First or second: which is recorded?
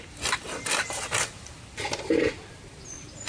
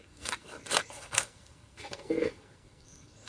first